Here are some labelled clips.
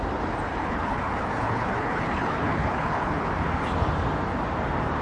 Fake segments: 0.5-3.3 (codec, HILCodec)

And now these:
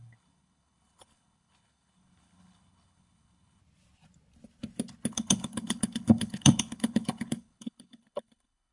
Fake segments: 0.0-3.6 (codec, HILCodec); 5.1-8.7

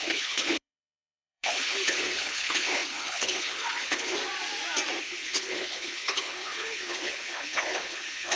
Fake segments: 0.0-4.2 (codec, HILCodec); 5.0-8.4

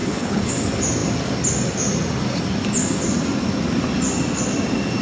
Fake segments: 0.0-0.5 (codec, HILCodec)

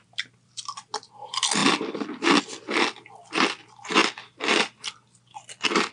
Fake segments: none

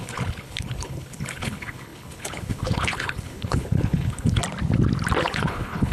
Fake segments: 0.0-4.4 (codec, HILCodec); 5.2-5.9

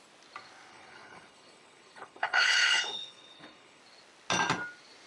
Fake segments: 0.7-3.8 (codec, HILCodec)